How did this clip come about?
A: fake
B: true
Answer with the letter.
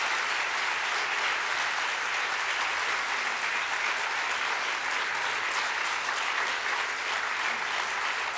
B